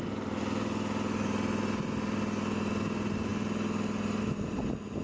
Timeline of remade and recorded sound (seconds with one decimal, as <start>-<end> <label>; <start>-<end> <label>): 0.0-5.0 recorded